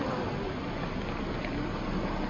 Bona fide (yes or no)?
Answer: yes